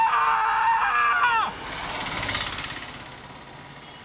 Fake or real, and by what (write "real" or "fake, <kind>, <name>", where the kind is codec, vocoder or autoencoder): real